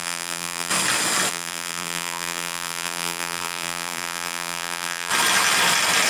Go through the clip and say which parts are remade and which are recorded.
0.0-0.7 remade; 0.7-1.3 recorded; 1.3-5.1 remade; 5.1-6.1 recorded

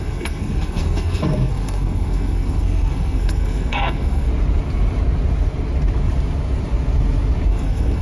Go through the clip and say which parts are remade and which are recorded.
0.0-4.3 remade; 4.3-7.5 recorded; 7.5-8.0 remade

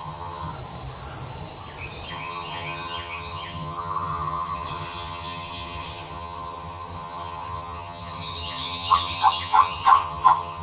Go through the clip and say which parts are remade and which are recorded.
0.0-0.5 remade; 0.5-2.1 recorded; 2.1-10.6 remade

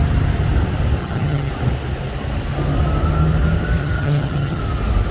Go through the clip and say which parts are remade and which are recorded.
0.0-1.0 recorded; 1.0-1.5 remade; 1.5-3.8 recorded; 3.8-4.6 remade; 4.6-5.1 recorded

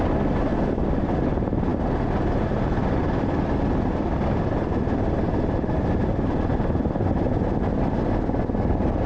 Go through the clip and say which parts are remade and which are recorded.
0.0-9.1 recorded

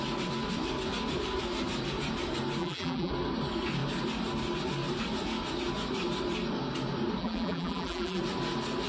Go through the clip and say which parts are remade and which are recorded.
0.0-2.6 recorded; 2.6-3.1 remade; 3.1-7.2 recorded; 7.2-8.2 remade; 8.2-8.9 recorded

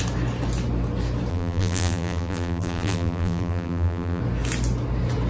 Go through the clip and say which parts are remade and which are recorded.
0.0-1.3 recorded; 1.3-4.2 remade; 4.2-5.3 recorded